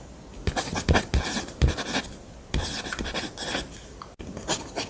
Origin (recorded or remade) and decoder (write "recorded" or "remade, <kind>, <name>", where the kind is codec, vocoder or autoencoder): recorded